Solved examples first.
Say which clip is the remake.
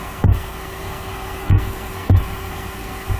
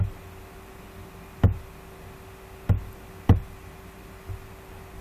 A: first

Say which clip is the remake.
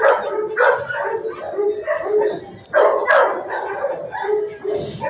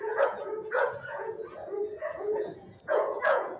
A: second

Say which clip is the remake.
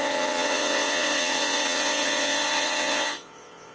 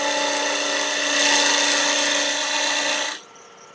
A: first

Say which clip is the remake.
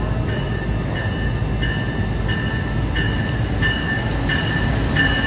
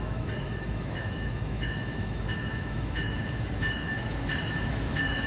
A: second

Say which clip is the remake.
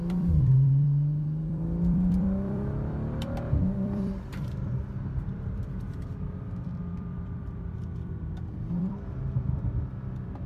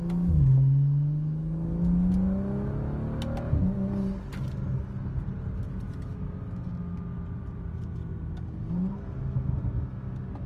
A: first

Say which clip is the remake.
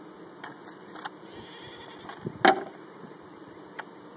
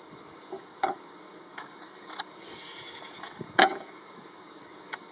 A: second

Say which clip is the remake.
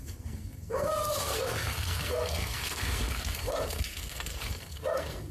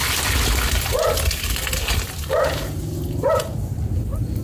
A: first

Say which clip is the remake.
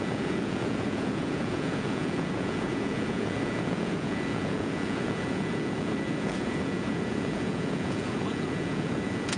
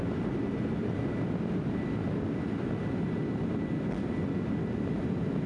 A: first